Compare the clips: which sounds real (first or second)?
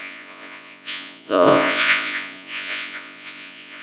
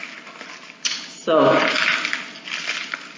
second